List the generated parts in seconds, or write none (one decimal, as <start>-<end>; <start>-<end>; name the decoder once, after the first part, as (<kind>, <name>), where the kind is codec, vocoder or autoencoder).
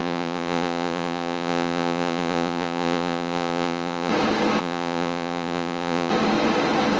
0.0-4.1 (vocoder, Vocos); 4.6-6.1